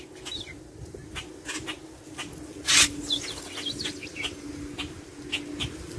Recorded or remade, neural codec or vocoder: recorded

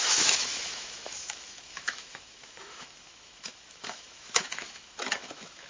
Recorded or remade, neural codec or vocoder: remade, autoencoder, DAC-VAE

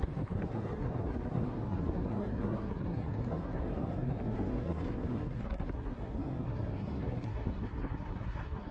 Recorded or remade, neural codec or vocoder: remade, codec, SNAC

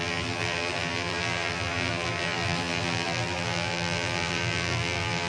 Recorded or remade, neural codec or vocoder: remade, vocoder, BigVGAN v2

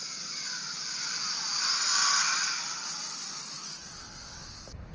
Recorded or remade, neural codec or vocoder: recorded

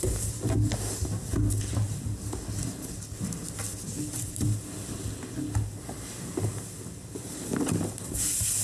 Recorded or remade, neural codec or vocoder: recorded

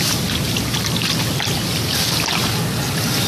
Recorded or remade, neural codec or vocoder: recorded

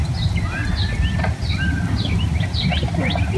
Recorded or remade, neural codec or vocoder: recorded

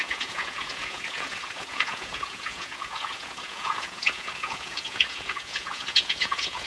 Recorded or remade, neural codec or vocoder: remade, vocoder, Vocos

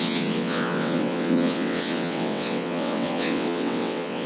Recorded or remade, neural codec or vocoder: remade, vocoder, WaveNeXt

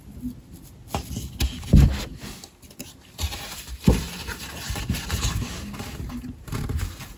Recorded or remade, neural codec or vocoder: recorded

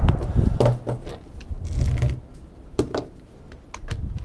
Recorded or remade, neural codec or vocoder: recorded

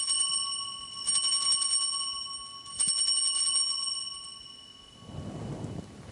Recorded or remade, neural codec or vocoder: recorded